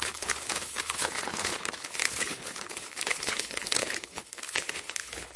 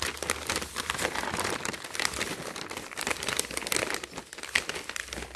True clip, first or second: second